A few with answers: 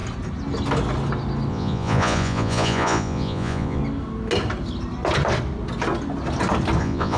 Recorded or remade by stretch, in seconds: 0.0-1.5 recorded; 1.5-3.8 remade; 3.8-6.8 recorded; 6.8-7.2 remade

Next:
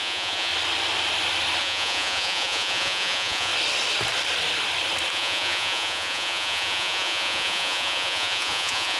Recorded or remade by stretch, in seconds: 0.0-0.5 remade; 0.5-1.6 recorded; 1.6-3.5 remade; 3.5-5.1 recorded; 5.1-9.0 remade

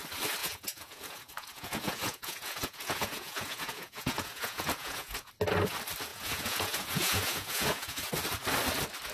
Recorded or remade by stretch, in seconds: 0.0-0.4 recorded; 0.4-5.3 remade; 5.3-6.1 recorded; 6.1-8.1 remade; 8.1-9.1 recorded

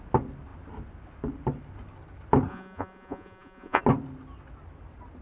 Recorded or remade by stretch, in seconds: 0.0-2.5 recorded; 2.5-3.8 remade; 3.8-5.2 recorded